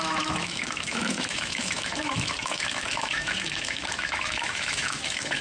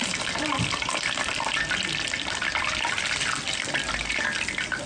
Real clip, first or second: second